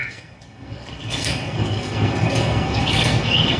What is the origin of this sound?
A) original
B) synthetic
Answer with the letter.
B